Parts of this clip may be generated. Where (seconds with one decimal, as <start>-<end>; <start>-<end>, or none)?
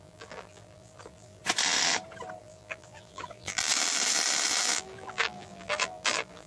0.0-1.4; 2.4-3.7; 4.6-6.5